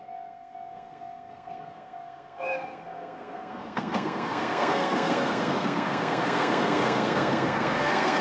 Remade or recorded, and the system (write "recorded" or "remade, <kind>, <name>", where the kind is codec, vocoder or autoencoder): remade, codec, SNAC